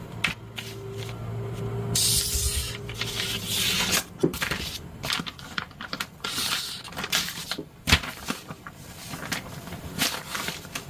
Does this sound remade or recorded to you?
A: recorded